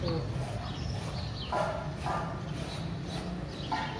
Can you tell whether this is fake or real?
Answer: real